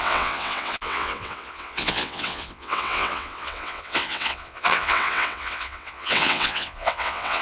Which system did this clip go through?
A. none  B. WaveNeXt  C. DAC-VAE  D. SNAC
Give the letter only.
B